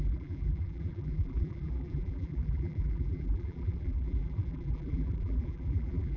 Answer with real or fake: fake